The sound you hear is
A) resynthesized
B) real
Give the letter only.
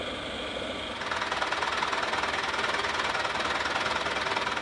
B